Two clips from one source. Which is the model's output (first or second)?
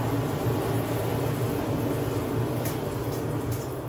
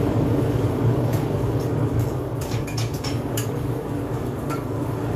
second